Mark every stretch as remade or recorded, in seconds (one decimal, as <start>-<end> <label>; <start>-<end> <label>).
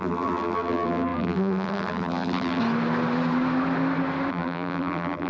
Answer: 0.0-2.6 remade; 2.6-4.3 recorded; 4.3-5.3 remade